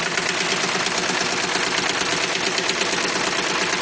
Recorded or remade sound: recorded